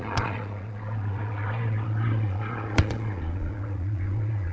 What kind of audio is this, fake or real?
fake